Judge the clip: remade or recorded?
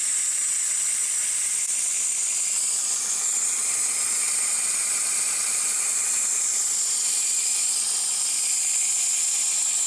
recorded